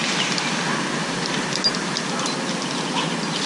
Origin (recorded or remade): recorded